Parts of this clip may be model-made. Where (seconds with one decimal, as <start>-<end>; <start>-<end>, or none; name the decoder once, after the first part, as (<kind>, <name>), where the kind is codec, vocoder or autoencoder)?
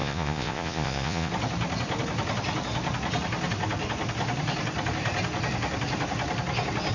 0.0-1.3 (vocoder, Vocos)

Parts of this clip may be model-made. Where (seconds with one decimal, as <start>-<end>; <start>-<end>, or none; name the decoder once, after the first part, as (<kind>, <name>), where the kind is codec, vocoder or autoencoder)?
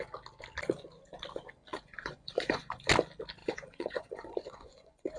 1.7-2.9 (vocoder, Vocos); 3.4-5.2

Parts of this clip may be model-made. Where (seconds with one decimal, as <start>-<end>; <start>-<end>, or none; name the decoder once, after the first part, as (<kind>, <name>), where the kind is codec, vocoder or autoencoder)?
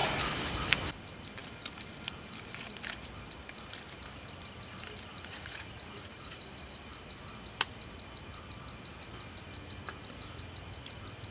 5.1-6.4 (vocoder, Vocos)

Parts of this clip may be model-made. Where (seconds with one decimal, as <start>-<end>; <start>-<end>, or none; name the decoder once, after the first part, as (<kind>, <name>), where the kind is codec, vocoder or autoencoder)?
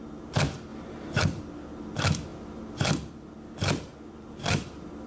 none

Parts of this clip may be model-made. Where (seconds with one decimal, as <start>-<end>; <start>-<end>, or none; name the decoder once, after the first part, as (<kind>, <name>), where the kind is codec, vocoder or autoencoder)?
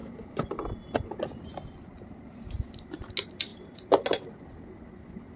none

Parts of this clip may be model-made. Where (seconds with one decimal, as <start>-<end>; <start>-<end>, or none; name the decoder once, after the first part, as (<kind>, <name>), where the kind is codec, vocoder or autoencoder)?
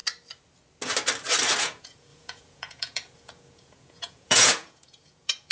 1.6-5.5 (vocoder, Vocos)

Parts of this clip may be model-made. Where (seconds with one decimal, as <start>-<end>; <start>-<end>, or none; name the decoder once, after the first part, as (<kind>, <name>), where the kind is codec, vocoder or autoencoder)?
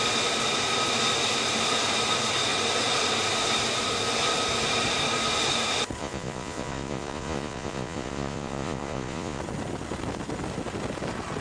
6.0-9.4 (vocoder, Vocos)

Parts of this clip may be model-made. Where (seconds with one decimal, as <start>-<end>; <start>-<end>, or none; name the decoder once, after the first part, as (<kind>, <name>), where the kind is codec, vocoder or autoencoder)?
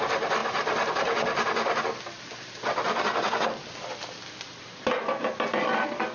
none